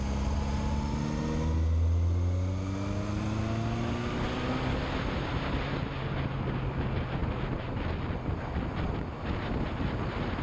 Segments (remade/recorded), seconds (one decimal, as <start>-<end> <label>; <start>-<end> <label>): 0.0-10.4 recorded